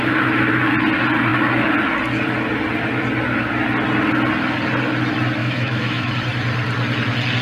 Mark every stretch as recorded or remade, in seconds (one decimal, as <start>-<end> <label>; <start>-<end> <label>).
0.0-5.4 recorded; 5.4-6.1 remade; 6.1-7.4 recorded